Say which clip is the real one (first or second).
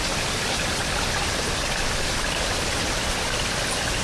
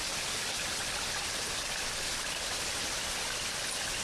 second